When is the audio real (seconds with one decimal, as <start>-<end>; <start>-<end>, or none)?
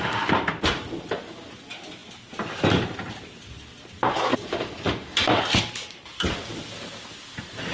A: 0.0-4.3; 6.6-7.7